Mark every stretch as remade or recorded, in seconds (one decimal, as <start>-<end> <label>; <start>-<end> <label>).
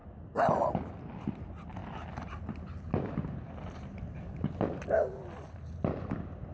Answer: 0.0-6.5 recorded